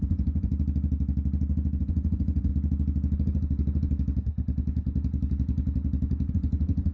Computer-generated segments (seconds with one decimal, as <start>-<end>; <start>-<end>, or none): 0.0-0.5; 1.8-2.5; 6.3-6.9

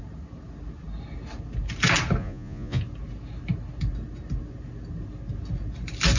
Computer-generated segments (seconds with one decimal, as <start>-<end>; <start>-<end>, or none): 2.2-2.8

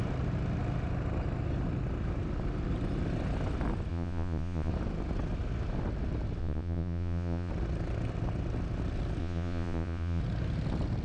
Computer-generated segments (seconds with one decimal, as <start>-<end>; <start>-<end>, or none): 3.9-4.7; 6.4-7.5; 9.2-10.2

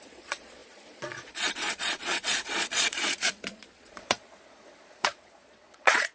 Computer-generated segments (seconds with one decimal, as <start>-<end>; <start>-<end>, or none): 0.0-6.1

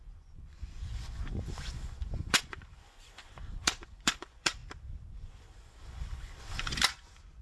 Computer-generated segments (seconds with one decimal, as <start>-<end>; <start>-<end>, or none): 0.0-4.6; 5.1-7.4

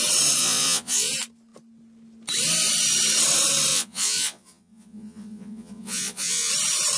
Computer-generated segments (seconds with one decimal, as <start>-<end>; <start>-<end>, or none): 0.4-1.1; 3.7-6.5

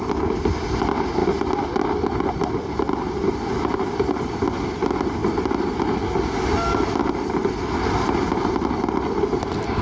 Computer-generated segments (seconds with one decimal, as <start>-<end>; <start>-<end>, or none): none

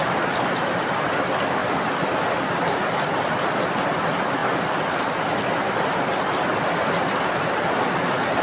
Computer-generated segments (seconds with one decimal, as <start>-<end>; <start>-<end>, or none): none